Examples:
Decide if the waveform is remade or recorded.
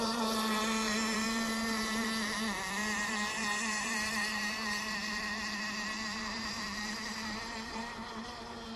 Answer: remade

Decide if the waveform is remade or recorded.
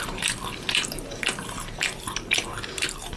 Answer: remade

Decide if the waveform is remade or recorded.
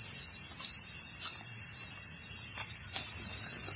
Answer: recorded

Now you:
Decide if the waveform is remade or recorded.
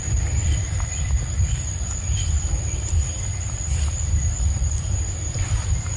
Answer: remade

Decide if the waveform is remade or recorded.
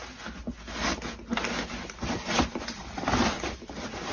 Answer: recorded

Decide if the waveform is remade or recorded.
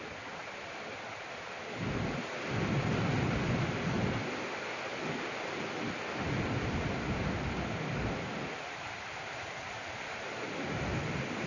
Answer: recorded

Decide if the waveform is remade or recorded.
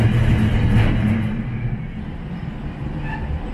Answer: recorded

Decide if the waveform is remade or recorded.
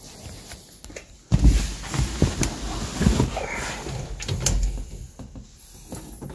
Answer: recorded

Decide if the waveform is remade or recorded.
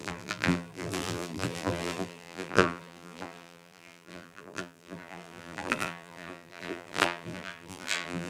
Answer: remade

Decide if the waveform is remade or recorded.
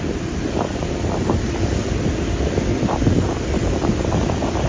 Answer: remade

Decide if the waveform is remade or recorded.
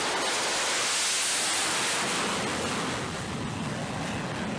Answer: recorded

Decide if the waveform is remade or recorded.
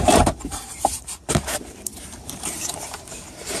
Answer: remade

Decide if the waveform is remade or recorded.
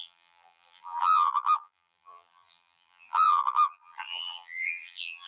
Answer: remade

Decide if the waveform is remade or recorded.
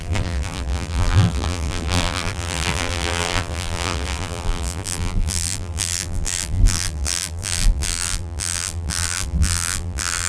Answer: remade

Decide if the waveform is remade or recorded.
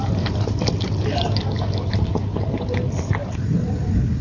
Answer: recorded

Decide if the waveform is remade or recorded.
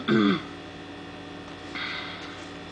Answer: recorded